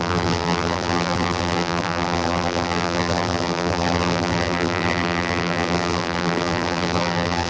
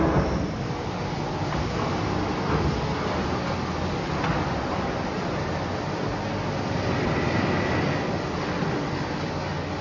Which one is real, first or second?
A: second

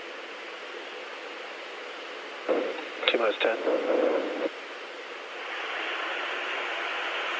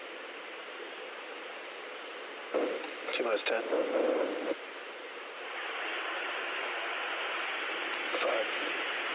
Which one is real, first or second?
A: first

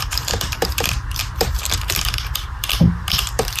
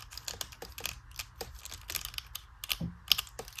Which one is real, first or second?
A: second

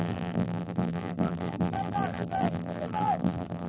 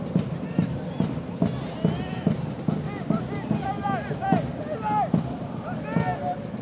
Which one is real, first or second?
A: second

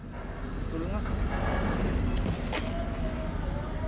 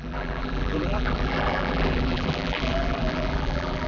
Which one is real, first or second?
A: first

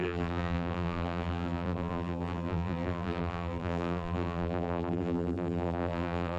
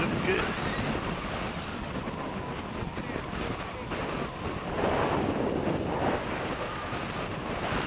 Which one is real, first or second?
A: second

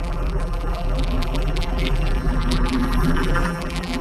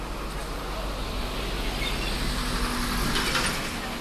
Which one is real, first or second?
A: second